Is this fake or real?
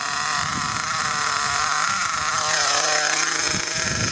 real